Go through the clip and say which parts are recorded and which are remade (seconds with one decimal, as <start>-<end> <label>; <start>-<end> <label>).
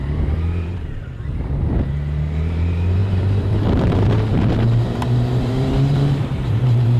0.0-7.0 remade